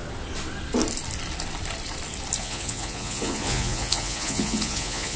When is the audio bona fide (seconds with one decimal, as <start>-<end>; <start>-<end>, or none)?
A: 0.0-2.4